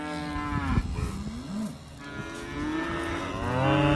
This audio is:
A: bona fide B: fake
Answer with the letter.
A